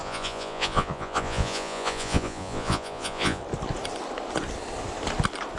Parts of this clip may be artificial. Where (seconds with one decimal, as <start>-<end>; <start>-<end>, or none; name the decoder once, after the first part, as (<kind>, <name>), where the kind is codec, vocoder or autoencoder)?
0.0-3.4 (vocoder, Vocos)